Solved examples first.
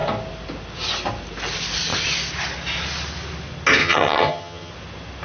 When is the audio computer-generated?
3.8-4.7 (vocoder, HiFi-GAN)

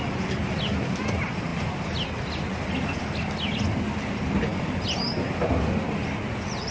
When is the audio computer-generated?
none

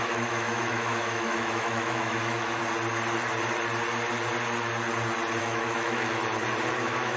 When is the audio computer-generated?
0.0-2.6 (autoencoder, DAC-VAE); 5.4-6.2; 6.7-7.2

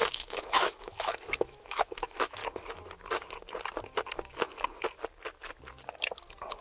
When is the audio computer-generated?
0.0-2.4 (autoencoder, DAC-VAE)

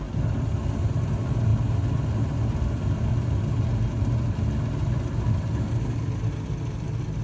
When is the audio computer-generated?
none

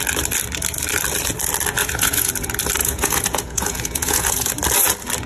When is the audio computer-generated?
1.8-2.3 (vocoder, Vocos); 2.8-4.5